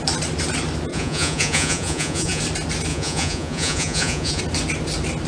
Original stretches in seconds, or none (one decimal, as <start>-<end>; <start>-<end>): 0.0-0.9; 2.4-2.9; 4.4-5.3